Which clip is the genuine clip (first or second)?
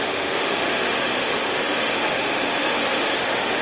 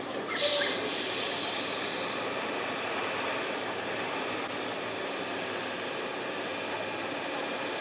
second